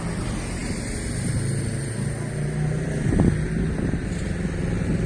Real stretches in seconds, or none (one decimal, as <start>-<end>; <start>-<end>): 0.0-5.1